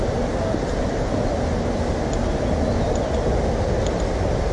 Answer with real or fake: real